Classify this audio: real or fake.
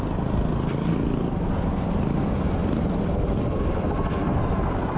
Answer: real